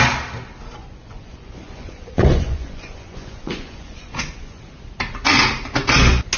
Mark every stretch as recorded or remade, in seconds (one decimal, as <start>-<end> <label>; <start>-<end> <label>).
0.0-0.8 recorded; 0.8-4.6 remade; 4.6-6.4 recorded